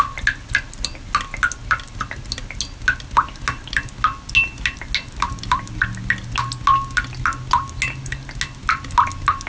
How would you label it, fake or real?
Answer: real